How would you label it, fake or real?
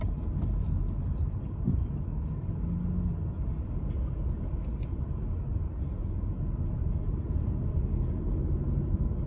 real